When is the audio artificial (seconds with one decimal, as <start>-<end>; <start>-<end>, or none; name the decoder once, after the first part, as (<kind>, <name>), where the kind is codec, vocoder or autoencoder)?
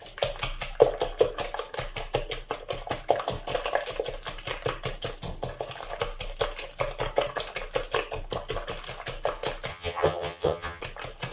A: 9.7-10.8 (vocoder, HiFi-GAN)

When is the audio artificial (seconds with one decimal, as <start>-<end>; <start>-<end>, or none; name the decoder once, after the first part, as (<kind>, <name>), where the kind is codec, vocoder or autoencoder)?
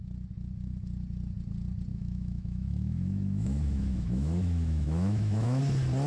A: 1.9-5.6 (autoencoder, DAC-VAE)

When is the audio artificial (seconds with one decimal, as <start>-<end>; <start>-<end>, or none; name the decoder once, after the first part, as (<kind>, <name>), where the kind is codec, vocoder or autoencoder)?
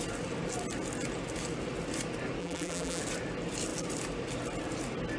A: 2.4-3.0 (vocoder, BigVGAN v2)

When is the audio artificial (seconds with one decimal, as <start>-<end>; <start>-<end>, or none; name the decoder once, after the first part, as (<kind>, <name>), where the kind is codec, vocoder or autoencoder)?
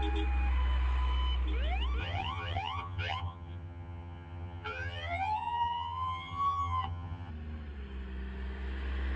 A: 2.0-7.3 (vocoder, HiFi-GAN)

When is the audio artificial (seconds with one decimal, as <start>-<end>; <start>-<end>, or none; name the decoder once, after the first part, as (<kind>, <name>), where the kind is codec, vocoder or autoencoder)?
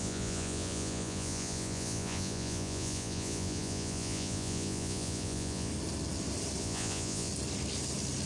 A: 0.0-5.7 (vocoder, Vocos); 6.6-7.3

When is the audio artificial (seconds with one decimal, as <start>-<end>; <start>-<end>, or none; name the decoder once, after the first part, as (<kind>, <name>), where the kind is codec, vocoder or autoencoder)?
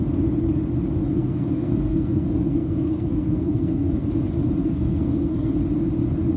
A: 1.0-4.1 (codec, SNAC); 4.6-5.5